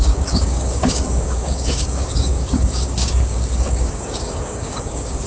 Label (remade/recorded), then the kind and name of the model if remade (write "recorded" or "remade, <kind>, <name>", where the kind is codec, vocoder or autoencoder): remade, codec, DAC